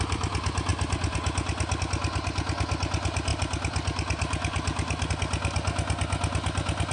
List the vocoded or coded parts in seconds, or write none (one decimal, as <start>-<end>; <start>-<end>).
3.3-5.1